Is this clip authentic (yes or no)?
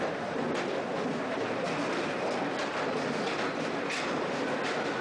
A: yes